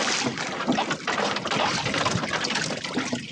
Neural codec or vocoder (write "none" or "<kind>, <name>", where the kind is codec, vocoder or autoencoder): none